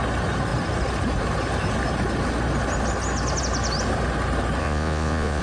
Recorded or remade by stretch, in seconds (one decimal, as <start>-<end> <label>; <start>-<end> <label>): 0.0-4.6 recorded; 4.6-5.4 remade